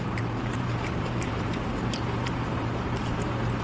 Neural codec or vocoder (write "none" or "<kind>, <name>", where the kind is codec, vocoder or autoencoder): vocoder, BigVGAN v2